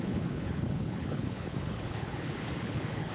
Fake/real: fake